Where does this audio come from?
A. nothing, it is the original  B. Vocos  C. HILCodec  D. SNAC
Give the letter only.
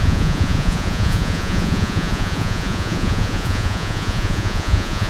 B